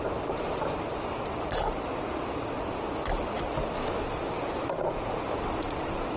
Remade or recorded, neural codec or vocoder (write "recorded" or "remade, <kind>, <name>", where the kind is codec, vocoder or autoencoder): recorded